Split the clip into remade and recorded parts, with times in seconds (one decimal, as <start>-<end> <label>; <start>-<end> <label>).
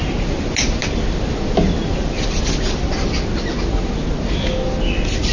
0.0-5.3 recorded